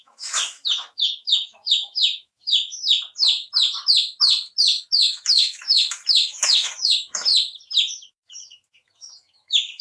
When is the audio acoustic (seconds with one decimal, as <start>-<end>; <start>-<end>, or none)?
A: 2.7-4.8; 7.3-8.1